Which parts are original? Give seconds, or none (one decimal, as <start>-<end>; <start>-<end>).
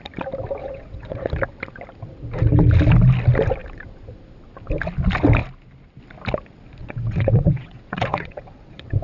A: 0.0-0.6; 1.3-6.8